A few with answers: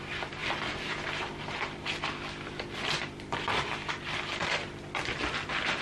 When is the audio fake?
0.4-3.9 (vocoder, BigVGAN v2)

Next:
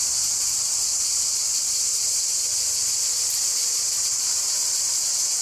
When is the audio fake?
1.9-2.4 (vocoder, BigVGAN v2); 3.6-4.2

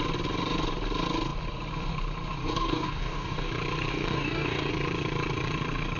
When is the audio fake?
2.4-3.5 (codec, DAC); 3.9-4.7

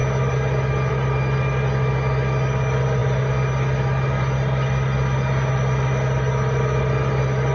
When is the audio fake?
none

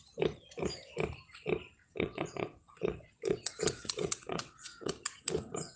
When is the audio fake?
1.8-4.9 (vocoder, WaveNeXt)

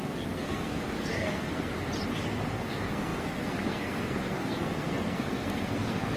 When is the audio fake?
0.0-1.7 (codec, SNAC); 2.5-6.2

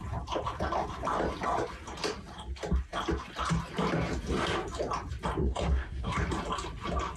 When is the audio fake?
5.4-6.2 (codec, SNAC)